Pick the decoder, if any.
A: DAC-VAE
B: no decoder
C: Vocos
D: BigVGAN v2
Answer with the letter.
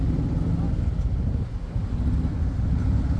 B